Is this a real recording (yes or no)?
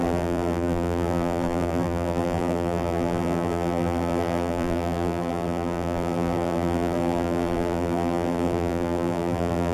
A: no